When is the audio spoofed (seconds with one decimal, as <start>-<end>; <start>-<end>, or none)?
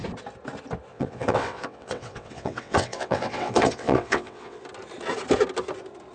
0.9-4.6